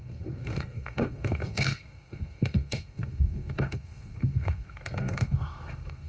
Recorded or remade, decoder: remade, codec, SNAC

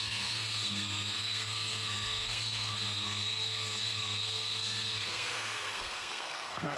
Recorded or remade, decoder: remade, codec, SNAC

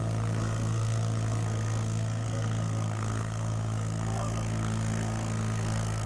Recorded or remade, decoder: remade, codec, SNAC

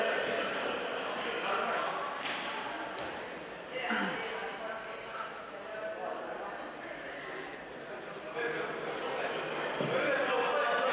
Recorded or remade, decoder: recorded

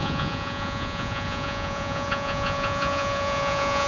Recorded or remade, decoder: remade, vocoder, Vocos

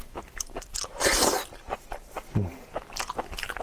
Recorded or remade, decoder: remade, vocoder, BigVGAN v2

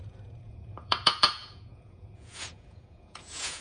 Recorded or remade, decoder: remade, vocoder, Vocos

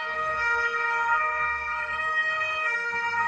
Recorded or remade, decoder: remade, codec, SNAC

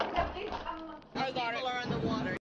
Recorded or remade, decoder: recorded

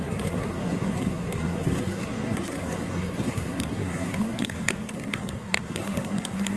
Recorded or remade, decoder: remade, codec, SNAC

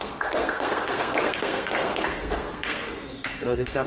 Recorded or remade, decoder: remade, codec, SNAC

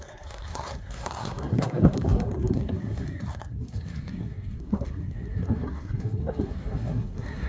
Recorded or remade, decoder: remade, codec, SNAC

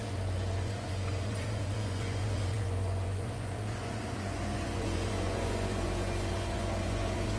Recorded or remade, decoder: remade, vocoder, Vocos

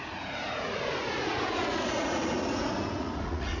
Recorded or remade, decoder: remade, vocoder, Vocos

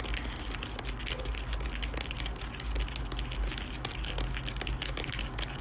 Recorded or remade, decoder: recorded